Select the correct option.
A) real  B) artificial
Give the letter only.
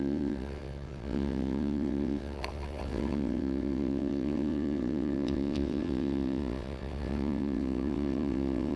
B